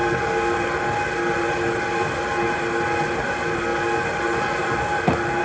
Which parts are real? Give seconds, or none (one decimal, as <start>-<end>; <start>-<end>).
0.0-5.4